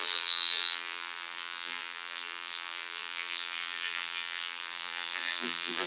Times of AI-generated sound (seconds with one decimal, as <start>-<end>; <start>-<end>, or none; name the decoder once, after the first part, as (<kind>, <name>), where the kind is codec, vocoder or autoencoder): 0.0-5.9 (vocoder, BigVGAN v2)